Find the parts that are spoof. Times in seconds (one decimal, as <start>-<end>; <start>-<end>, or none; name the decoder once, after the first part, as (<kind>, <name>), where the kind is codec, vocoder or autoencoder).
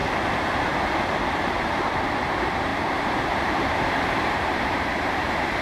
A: 1.5-5.6 (vocoder, BigVGAN v2)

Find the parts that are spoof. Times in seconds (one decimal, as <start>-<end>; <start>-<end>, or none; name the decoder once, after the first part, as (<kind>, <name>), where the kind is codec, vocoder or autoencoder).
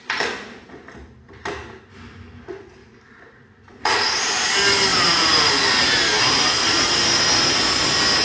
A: 2.8-4.2 (vocoder, BigVGAN v2); 4.9-5.7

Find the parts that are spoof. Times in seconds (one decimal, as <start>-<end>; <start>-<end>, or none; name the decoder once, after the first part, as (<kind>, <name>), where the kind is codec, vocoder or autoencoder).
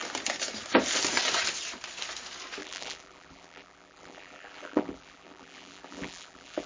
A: 2.6-6.7 (vocoder, BigVGAN v2)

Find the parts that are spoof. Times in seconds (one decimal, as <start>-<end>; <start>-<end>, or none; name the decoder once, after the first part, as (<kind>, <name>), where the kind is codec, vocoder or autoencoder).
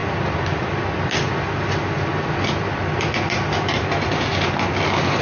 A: none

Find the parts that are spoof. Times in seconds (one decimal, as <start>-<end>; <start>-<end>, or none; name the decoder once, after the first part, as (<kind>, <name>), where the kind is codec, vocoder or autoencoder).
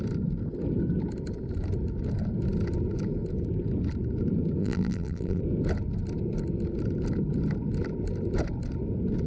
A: 4.6-5.4 (vocoder, BigVGAN v2)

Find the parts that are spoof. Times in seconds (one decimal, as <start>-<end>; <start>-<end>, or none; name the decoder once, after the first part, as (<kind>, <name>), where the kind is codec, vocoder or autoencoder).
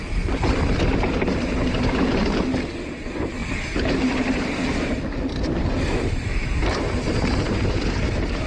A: 0.9-2.2 (vocoder, BigVGAN v2); 3.4-5.0; 6.3-8.5